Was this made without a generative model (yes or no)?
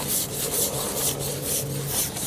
yes